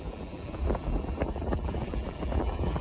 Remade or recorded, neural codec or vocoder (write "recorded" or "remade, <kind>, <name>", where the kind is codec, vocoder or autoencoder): remade, vocoder, BigVGAN v2